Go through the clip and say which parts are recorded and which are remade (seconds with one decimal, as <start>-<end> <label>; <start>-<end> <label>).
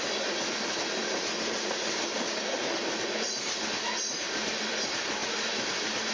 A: 0.0-6.1 recorded